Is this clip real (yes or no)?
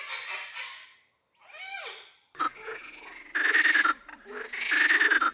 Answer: yes